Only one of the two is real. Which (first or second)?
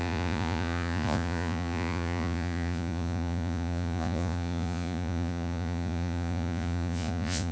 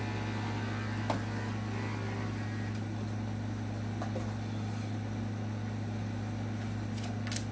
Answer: second